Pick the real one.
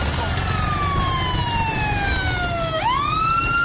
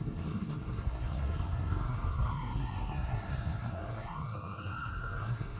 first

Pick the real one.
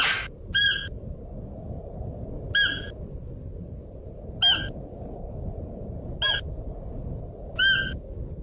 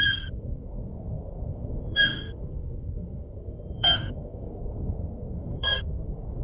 first